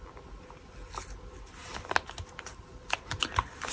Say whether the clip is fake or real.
real